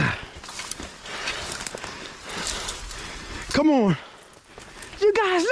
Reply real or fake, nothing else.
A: real